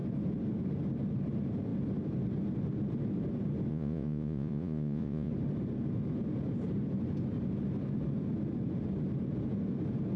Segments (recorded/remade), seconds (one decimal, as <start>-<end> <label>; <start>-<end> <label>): 0.0-3.7 recorded; 3.7-5.3 remade; 5.3-10.2 recorded

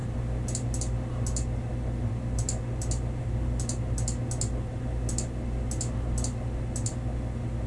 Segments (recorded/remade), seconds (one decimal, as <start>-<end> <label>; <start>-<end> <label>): 0.0-7.7 recorded

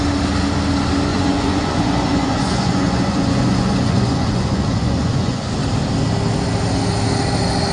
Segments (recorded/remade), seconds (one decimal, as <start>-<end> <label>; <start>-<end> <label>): 0.0-1.1 recorded; 1.1-5.6 remade; 5.6-7.7 recorded

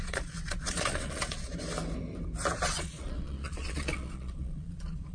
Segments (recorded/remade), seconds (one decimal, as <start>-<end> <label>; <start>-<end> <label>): 0.0-1.5 remade; 1.5-2.6 recorded; 2.6-5.1 remade

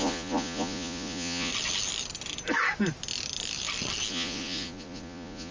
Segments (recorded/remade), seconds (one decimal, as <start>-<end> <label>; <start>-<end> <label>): 0.0-1.5 remade; 1.5-4.1 recorded; 4.1-5.5 remade

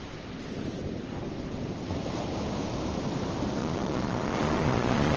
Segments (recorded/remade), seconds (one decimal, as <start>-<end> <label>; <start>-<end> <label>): 0.0-3.6 recorded; 3.6-5.2 remade

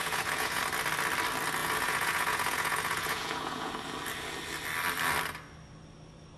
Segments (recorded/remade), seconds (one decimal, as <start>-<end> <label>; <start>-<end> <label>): 0.0-0.6 remade; 0.6-1.6 recorded; 1.6-3.7 remade; 3.7-6.4 recorded

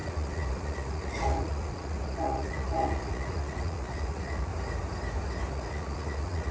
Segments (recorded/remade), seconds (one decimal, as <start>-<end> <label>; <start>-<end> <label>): 0.0-4.5 remade; 4.5-5.5 recorded; 5.5-6.5 remade